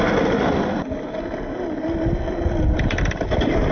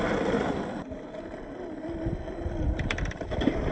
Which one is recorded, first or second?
first